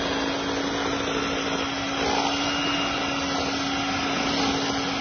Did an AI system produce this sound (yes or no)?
no